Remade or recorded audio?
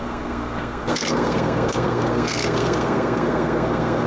remade